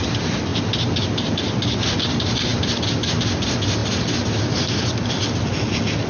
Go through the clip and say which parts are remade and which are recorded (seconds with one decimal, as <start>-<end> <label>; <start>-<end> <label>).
0.0-6.1 recorded